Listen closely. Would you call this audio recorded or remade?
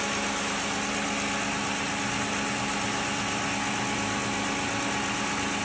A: recorded